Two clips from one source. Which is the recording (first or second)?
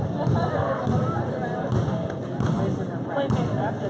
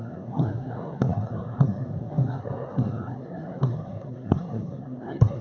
first